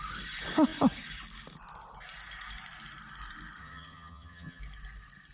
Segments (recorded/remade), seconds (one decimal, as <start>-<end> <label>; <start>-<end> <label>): 0.0-3.6 recorded; 3.6-4.6 remade; 4.6-5.3 recorded